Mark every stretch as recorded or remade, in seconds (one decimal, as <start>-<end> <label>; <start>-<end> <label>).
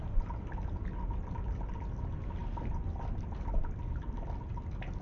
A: 0.0-5.0 recorded